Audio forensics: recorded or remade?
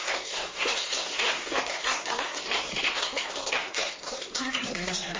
remade